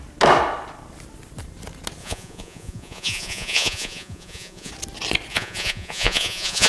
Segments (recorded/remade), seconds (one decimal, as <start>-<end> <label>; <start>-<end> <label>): 0.0-2.0 recorded; 2.0-4.7 remade; 4.7-5.3 recorded; 5.3-6.7 remade